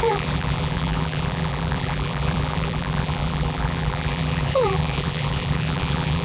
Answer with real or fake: fake